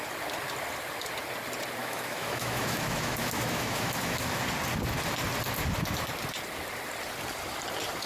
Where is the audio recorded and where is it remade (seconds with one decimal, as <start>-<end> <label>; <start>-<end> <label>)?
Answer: 0.0-1.8 recorded; 1.8-4.4 remade; 4.4-8.1 recorded